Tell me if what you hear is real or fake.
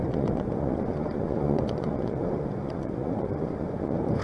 fake